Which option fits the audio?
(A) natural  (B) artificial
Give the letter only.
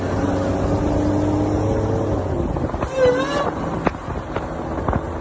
A